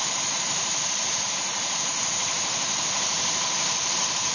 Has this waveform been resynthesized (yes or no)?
no